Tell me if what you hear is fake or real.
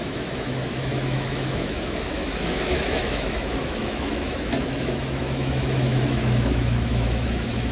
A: fake